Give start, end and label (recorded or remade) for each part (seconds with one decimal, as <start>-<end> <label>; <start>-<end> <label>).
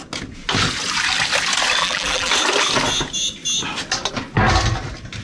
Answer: 0.0-1.8 recorded; 1.8-2.3 remade; 2.3-5.2 recorded